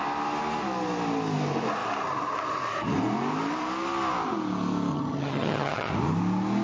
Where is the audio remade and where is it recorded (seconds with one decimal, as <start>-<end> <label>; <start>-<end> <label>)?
0.0-4.9 recorded; 4.9-5.9 remade; 5.9-6.6 recorded